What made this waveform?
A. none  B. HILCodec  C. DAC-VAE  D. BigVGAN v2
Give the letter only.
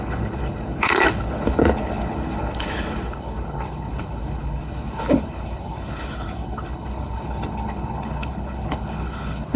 B